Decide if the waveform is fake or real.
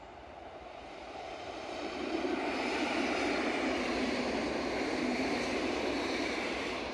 fake